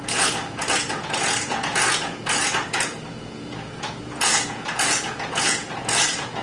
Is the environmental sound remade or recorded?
remade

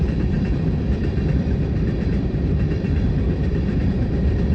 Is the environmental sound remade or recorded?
remade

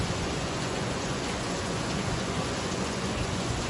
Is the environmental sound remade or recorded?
remade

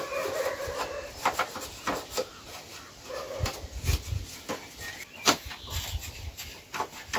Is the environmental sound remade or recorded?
recorded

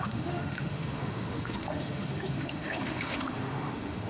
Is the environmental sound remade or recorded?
remade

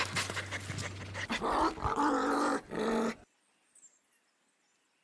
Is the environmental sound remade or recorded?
recorded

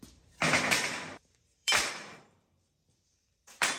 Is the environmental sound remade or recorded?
remade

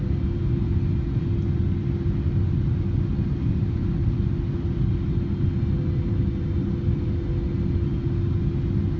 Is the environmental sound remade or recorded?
recorded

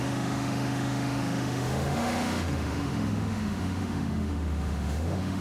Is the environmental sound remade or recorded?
remade